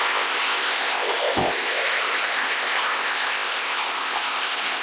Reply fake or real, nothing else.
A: fake